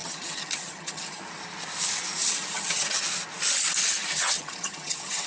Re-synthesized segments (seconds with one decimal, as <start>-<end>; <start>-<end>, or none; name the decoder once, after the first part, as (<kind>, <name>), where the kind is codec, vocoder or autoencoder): 0.0-1.2 (vocoder, HiFi-GAN); 2.2-3.0; 3.8-5.3